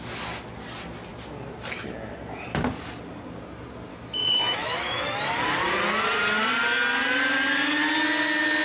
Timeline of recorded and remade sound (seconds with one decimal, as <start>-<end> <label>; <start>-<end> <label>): 0.0-3.9 recorded; 3.9-5.4 remade; 5.4-8.6 recorded